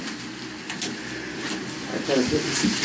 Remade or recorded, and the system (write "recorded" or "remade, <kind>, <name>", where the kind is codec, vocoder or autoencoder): recorded